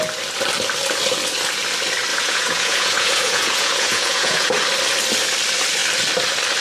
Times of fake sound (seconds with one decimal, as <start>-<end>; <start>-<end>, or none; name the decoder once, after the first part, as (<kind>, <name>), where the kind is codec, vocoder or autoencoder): 2.1-4.5 (vocoder, Vocos)

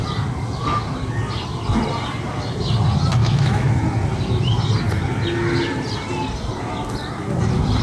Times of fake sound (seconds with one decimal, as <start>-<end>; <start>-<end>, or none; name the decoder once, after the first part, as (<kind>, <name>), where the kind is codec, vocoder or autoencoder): 3.2-3.7 (autoencoder, DAC-VAE)

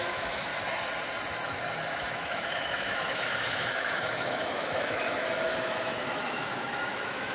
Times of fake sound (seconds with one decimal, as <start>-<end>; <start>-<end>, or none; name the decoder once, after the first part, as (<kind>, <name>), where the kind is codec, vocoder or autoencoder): 0.0-0.5 (autoencoder, DAC-VAE); 1.9-7.3

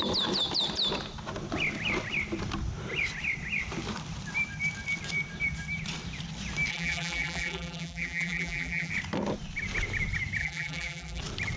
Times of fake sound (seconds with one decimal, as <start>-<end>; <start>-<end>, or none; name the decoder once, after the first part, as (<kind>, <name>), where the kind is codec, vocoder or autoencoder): 6.7-8.9 (vocoder, BigVGAN v2); 10.4-11.2